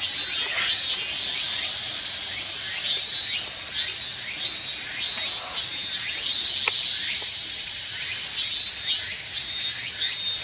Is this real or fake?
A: real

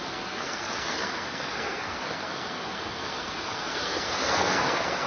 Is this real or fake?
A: fake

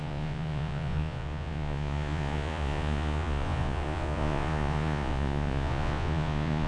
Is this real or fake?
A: fake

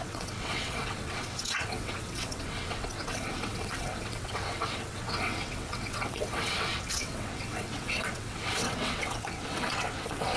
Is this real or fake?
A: fake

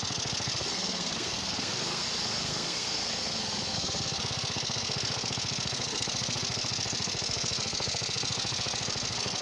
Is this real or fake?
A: fake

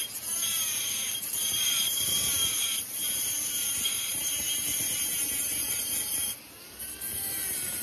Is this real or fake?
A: fake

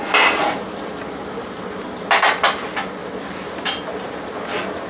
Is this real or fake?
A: real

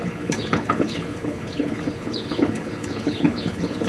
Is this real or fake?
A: fake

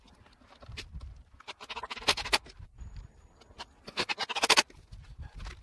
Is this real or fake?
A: real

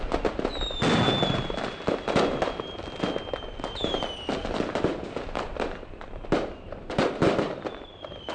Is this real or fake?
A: real